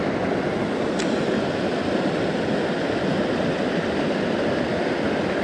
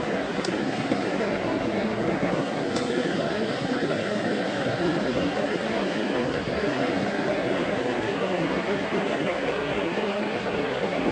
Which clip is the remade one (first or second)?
second